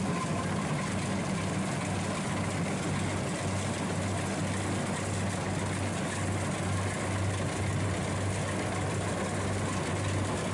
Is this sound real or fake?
real